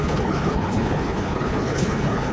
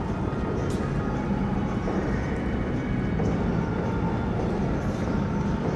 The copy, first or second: first